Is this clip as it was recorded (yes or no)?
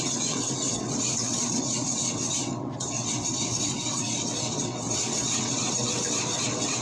no